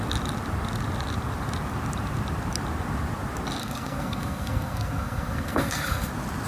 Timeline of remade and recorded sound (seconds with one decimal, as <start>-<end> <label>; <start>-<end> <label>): 0.0-3.6 recorded; 3.6-6.1 remade; 6.1-6.5 recorded